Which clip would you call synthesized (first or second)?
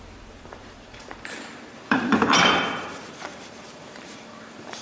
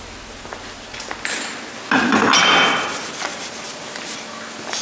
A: first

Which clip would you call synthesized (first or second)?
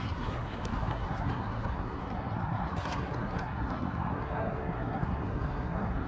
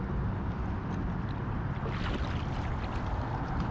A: first